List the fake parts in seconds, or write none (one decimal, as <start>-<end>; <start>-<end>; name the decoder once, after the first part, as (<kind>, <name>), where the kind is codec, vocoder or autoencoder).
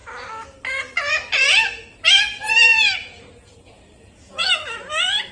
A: 3.0-4.5 (vocoder, Vocos)